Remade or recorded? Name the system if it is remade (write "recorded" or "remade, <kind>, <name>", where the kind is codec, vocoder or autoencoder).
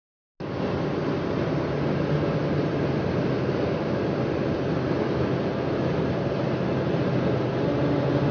recorded